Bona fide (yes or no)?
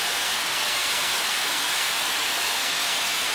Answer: no